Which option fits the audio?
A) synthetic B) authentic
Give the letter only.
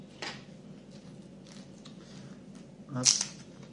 B